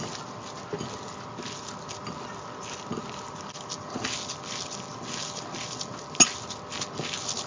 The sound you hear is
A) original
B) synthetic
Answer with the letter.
A